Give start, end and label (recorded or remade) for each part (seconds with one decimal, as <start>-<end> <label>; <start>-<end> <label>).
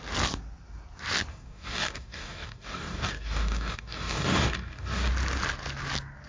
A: 0.0-1.3 recorded; 1.3-5.1 remade; 5.1-6.3 recorded